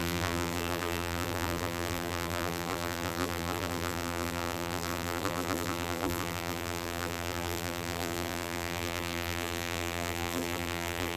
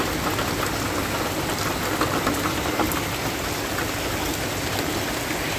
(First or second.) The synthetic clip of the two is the first